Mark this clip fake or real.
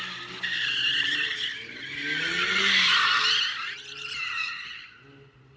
real